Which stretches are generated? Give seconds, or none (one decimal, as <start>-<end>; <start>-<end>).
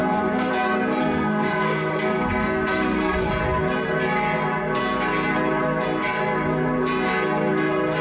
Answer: 0.0-0.5; 1.0-3.3